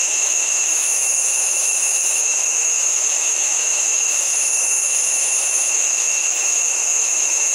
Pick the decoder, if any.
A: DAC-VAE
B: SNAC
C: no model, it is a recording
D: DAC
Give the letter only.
A